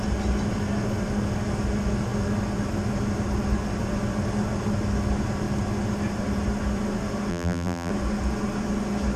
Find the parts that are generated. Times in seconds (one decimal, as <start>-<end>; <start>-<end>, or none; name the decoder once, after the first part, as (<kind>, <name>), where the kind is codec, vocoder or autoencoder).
7.3-7.9 (vocoder, BigVGAN v2)